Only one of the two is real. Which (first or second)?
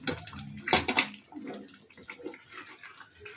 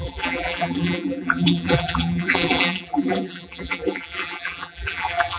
first